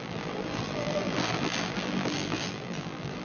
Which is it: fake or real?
fake